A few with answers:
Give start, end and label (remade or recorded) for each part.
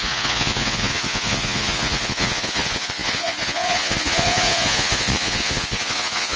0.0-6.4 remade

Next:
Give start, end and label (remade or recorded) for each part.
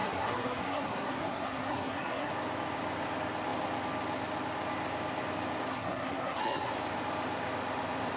0.0-2.3 remade; 2.3-5.7 recorded; 5.7-6.7 remade; 6.7-8.2 recorded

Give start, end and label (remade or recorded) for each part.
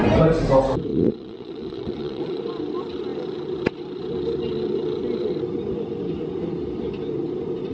0.0-0.9 recorded; 0.9-2.4 remade; 2.4-7.7 recorded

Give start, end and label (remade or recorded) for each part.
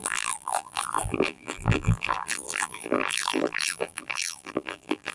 0.0-5.1 remade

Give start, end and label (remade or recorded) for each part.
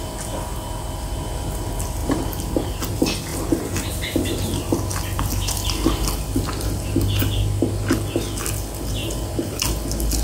0.0-10.2 recorded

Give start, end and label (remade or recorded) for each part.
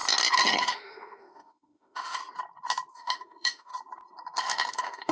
0.0-0.6 recorded; 0.6-2.2 remade; 2.2-2.9 recorded; 2.9-3.7 remade; 3.7-4.4 recorded; 4.4-5.1 remade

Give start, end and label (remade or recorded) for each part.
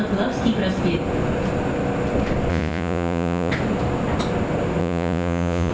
0.0-2.5 recorded; 2.5-3.5 remade; 3.5-4.8 recorded; 4.8-5.7 remade